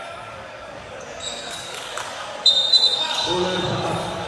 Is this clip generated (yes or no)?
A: yes